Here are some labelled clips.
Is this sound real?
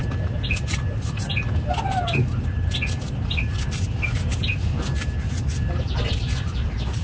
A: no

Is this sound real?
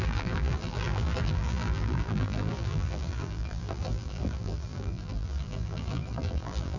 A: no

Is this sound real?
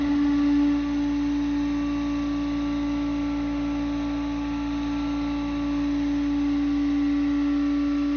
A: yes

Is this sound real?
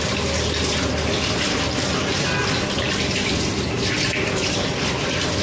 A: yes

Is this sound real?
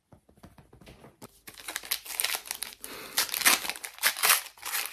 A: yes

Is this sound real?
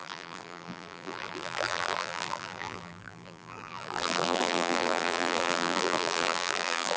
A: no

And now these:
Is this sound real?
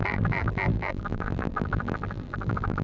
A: no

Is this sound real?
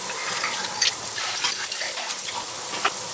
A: yes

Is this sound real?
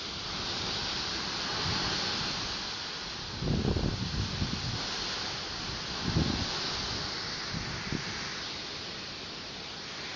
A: yes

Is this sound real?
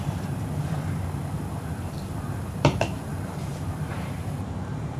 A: no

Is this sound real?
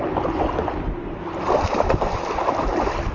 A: yes